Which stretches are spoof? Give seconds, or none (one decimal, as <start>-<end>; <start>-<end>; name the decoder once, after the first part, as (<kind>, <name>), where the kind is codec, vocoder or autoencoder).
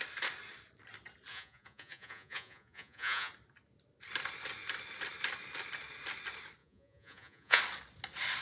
1.3-3.3 (vocoder, Vocos); 6.6-7.6